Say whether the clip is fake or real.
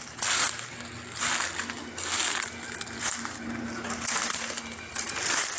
real